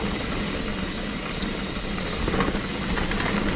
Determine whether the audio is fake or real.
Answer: real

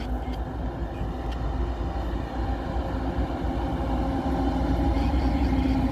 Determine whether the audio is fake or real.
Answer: real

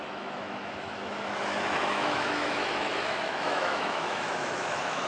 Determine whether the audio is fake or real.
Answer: fake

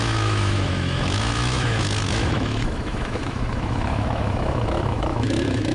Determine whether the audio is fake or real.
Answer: fake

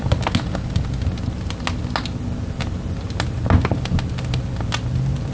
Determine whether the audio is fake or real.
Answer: real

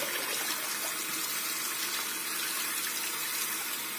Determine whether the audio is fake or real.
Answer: real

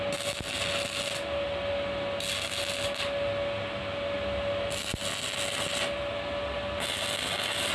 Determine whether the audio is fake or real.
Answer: real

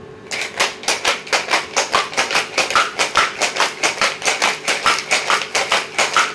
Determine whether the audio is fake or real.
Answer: real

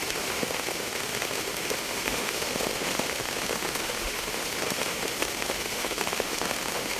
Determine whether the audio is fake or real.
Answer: fake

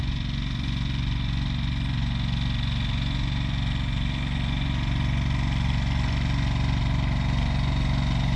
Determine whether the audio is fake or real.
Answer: real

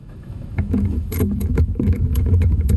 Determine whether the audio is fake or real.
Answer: fake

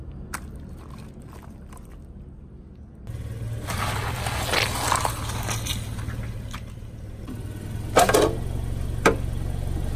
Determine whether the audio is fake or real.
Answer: real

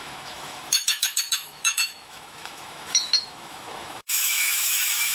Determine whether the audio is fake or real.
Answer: fake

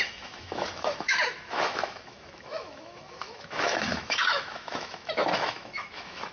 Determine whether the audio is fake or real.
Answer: fake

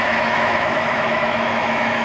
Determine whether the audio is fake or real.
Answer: fake